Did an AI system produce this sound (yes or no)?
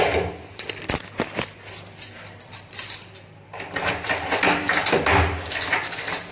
no